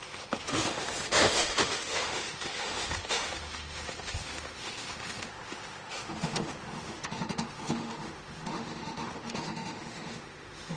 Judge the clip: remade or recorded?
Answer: remade